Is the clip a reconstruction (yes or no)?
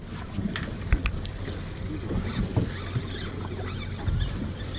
no